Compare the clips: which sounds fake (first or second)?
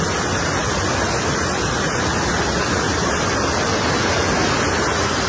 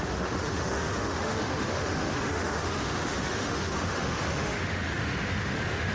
second